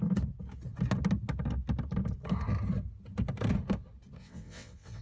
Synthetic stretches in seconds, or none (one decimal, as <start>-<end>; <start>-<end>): 4.2-5.0